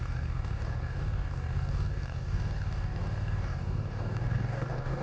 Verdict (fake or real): fake